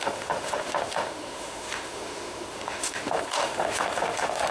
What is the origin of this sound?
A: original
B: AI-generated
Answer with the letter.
B